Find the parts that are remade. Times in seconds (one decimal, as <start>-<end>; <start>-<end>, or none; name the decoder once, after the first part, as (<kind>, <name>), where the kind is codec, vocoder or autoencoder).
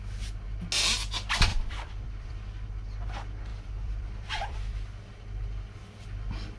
1.5-2.3 (vocoder, BigVGAN v2); 3.5-5.1